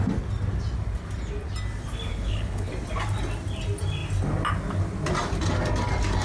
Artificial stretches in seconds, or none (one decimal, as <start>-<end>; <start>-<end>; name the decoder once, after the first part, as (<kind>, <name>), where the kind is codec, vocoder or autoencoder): 2.1-2.7 (codec, HILCodec)